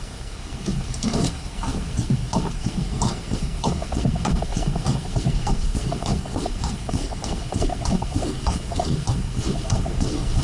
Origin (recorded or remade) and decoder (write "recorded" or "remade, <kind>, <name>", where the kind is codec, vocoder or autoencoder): remade, codec, SNAC